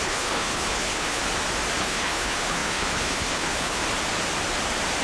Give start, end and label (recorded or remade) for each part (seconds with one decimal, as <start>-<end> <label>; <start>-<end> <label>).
0.0-1.2 remade; 1.2-1.8 recorded; 1.8-3.8 remade; 3.8-5.0 recorded